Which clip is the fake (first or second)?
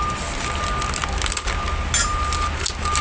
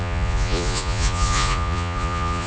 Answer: second